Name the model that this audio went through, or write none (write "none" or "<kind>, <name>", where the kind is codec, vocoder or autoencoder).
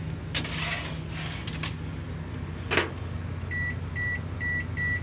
none